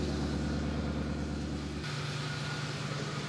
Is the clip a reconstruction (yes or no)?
no